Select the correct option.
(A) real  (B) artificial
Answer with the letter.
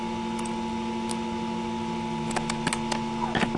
A